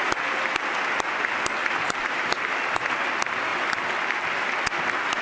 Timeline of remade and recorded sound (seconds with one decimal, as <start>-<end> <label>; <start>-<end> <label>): 0.0-1.6 recorded; 1.6-2.2 remade; 2.2-5.2 recorded

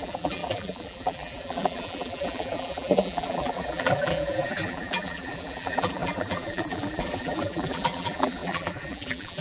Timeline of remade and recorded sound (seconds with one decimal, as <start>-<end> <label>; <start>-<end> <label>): 0.0-9.4 remade

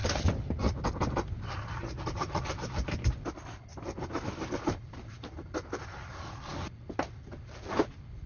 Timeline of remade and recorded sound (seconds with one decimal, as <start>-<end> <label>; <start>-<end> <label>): 0.0-3.7 recorded; 3.7-4.8 remade; 4.8-8.3 recorded

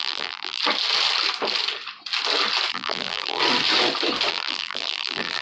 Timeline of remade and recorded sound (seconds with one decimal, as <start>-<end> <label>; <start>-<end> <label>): 0.0-0.6 remade; 0.6-2.7 recorded; 2.7-3.4 remade; 3.4-4.3 recorded; 4.3-5.4 remade

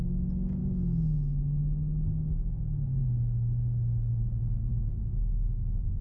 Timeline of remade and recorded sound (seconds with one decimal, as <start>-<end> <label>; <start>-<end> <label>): 0.0-6.0 recorded